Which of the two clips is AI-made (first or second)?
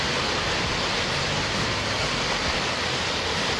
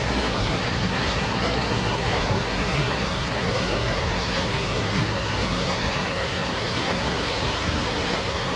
second